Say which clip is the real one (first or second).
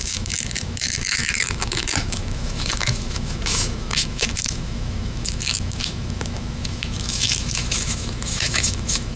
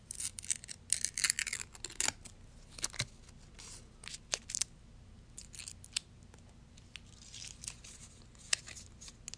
second